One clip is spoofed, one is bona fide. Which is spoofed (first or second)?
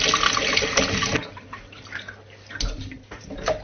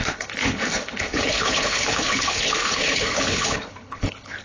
second